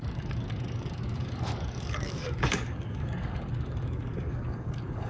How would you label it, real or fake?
fake